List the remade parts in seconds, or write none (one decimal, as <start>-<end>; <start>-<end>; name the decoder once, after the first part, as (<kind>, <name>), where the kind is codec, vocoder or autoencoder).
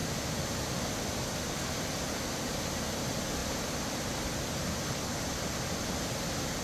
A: 0.0-0.7 (vocoder, BigVGAN v2)